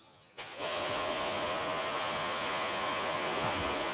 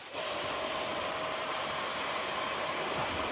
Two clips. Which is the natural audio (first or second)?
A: second